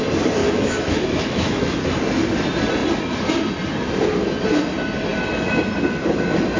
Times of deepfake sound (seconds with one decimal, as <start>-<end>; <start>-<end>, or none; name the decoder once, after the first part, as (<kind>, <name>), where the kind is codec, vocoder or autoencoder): 0.4-1.8 (autoencoder, DAC-VAE)